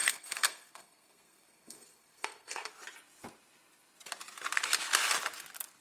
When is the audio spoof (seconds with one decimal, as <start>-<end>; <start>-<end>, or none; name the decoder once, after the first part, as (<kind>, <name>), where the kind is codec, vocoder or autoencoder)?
0.0-2.7 (codec, SNAC)